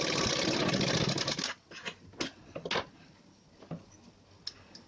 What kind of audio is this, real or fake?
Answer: real